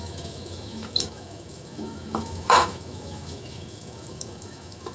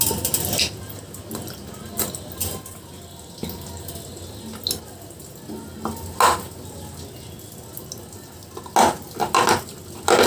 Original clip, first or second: second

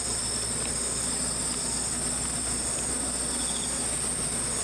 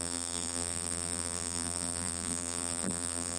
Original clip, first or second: first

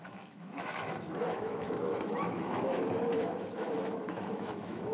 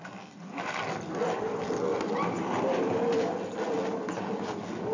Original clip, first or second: second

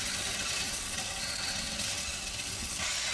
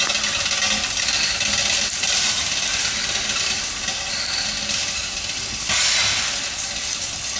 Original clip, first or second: second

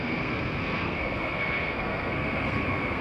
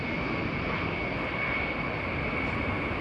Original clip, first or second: second